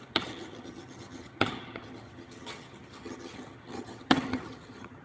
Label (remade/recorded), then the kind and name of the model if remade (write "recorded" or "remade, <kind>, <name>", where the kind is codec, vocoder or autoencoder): remade, vocoder, HiFi-GAN